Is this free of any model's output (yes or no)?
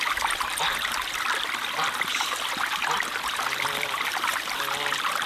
no